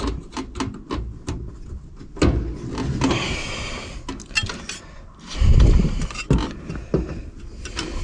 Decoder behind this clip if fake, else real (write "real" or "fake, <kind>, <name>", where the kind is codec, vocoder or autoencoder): real